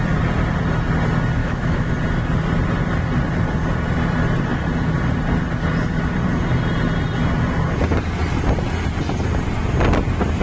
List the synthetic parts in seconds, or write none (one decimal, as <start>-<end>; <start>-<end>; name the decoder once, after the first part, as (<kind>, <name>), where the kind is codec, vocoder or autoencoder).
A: 1.4-1.9 (autoencoder, DAC-VAE)